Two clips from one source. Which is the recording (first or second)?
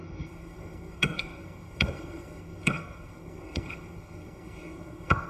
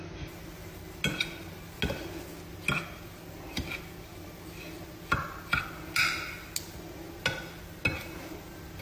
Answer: second